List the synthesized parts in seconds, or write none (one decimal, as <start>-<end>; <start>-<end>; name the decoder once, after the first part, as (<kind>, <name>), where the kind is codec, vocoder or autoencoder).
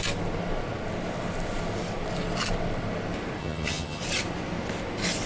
3.4-4.0 (vocoder, HiFi-GAN)